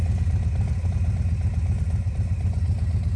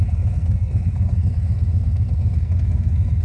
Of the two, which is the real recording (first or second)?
first